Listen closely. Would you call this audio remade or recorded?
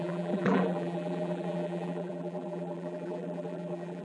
remade